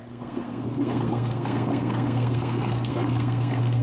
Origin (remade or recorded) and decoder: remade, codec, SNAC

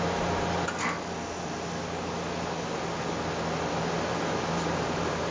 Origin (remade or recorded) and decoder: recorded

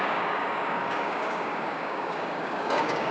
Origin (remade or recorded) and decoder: remade, codec, DAC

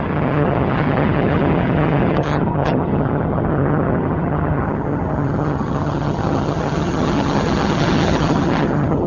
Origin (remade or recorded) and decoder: remade, vocoder, HiFi-GAN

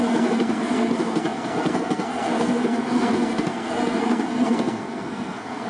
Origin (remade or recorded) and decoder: remade, codec, SNAC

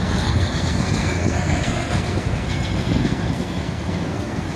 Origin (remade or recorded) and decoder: remade, codec, SNAC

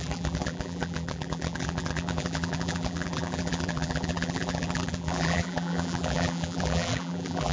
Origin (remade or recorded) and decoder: remade, vocoder, BigVGAN v2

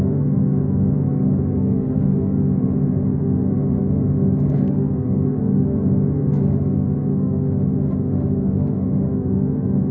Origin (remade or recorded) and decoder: remade, autoencoder, DAC-VAE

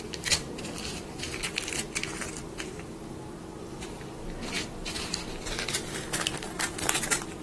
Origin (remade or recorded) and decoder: remade, vocoder, BigVGAN v2